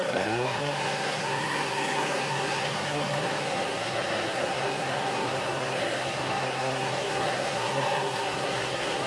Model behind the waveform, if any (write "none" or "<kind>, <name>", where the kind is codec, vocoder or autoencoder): codec, SNAC